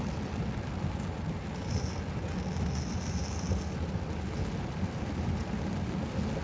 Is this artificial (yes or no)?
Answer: no